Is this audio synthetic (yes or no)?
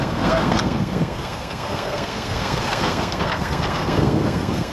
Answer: yes